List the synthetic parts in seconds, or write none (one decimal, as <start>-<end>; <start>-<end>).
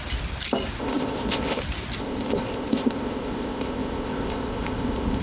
0.8-1.6; 2.0-5.2